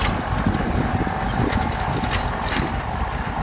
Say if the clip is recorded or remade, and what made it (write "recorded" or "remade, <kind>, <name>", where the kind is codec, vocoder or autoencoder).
recorded